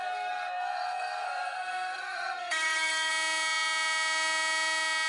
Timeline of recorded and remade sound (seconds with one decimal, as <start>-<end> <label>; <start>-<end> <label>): 0.0-3.1 remade; 3.1-5.1 recorded